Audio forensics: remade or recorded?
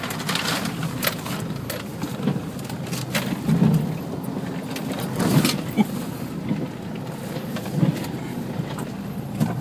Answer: recorded